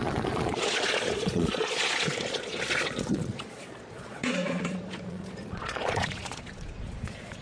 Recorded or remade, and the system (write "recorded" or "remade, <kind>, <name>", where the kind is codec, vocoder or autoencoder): remade, vocoder, Vocos